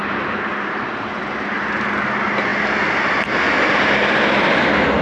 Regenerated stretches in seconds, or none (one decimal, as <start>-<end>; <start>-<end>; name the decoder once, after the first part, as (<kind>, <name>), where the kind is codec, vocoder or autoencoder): 0.0-1.6 (vocoder, BigVGAN v2)

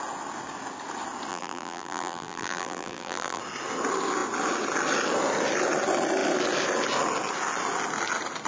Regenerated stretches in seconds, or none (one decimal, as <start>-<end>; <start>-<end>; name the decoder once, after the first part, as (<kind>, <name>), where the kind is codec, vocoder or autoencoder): 1.3-3.4 (vocoder, BigVGAN v2)

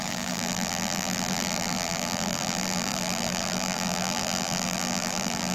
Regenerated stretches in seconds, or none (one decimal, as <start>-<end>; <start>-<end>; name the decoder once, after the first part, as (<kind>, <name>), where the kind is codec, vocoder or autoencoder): 0.0-5.5 (vocoder, BigVGAN v2)

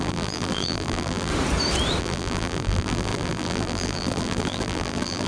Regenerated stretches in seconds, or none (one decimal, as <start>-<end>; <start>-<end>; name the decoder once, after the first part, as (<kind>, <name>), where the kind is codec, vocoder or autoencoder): 0.0-1.3 (vocoder, BigVGAN v2); 2.0-5.3

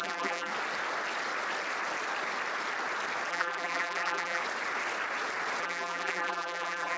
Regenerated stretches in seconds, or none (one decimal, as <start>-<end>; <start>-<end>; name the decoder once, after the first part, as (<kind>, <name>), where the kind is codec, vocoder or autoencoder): 0.0-0.5 (vocoder, BigVGAN v2); 3.3-4.4; 5.6-7.0

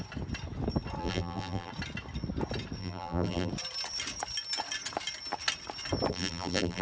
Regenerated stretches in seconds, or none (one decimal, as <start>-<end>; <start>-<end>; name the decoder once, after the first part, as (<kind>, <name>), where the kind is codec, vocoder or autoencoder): 1.0-1.7 (vocoder, BigVGAN v2); 2.8-3.5; 6.1-6.8